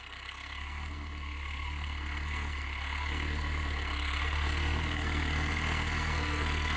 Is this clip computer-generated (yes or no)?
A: yes